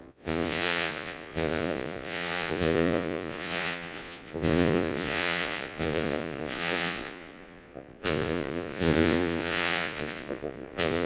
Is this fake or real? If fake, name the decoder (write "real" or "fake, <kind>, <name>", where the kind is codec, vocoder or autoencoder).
fake, vocoder, Vocos